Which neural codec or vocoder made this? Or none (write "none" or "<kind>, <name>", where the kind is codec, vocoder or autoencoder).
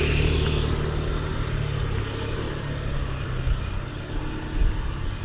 none